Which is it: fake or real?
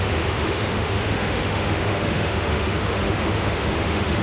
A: fake